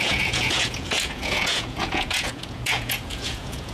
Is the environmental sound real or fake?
fake